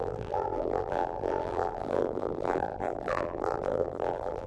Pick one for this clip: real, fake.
fake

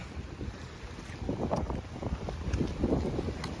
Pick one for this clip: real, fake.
real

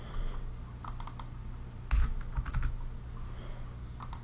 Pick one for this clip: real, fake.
real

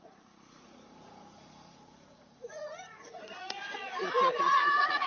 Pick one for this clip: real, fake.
fake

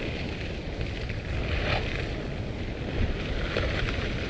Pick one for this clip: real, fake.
real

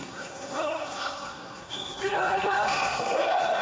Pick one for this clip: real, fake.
fake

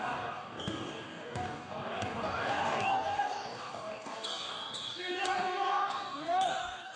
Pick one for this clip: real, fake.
fake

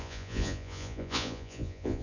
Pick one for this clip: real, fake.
fake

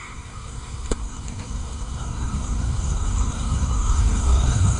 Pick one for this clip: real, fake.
fake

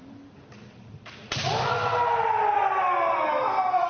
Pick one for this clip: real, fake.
real